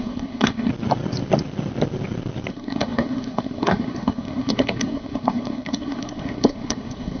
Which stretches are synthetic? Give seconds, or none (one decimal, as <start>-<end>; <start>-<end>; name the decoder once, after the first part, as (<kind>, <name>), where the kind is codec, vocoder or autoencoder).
0.0-0.7 (codec, SNAC); 2.5-7.2